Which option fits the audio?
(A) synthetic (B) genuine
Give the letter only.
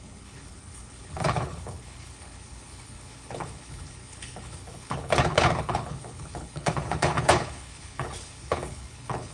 A